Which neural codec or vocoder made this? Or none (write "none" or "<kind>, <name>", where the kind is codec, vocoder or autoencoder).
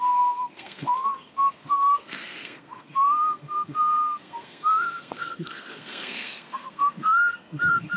codec, SNAC